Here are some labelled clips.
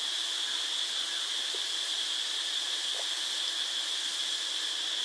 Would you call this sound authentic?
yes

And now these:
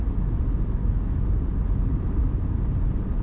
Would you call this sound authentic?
no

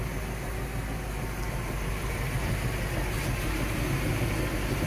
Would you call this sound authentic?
yes